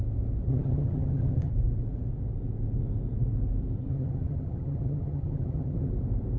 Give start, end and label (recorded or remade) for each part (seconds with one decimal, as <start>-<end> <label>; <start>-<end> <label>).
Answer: 0.0-0.5 recorded; 0.5-1.5 remade; 1.5-3.9 recorded; 3.9-5.9 remade; 5.9-6.4 recorded